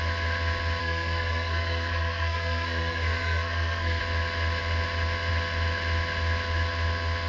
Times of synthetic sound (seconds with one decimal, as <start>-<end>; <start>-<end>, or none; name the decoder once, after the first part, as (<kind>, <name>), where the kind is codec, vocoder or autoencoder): 0.8-4.0 (codec, SNAC)